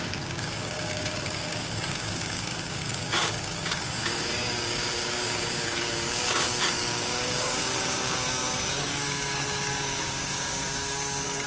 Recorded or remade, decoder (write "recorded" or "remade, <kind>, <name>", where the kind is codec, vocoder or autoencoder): remade, codec, DAC